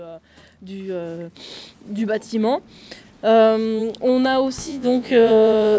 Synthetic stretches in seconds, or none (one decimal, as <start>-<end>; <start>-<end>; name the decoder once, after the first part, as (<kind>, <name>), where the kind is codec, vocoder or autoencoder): 4.6-5.8 (vocoder, Vocos)